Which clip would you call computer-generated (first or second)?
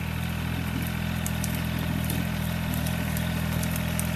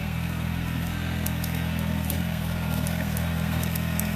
second